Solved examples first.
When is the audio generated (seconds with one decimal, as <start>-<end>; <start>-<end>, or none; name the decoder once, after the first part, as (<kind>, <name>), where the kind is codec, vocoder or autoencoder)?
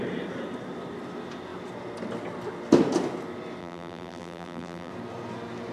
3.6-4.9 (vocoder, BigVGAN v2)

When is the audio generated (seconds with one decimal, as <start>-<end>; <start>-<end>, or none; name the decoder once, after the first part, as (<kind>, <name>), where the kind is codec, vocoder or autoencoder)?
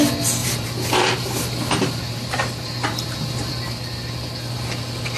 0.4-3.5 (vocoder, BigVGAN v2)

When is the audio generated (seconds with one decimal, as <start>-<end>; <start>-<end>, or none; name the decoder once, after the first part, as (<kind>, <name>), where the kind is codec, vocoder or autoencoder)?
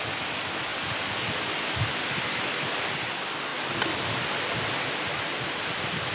none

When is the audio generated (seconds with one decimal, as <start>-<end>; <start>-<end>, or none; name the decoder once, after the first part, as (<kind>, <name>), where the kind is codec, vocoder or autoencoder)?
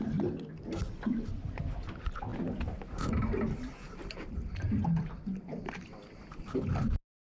2.3-6.7 (vocoder, BigVGAN v2)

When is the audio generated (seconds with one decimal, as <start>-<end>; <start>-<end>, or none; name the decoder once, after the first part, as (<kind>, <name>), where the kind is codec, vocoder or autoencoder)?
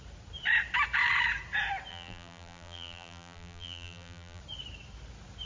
1.9-4.4 (vocoder, BigVGAN v2)